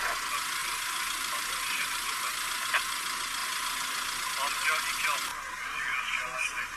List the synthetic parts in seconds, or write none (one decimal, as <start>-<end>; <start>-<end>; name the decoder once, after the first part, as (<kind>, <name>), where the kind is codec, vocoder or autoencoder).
0.6-2.8 (vocoder, BigVGAN v2)